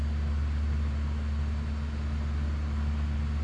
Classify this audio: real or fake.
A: real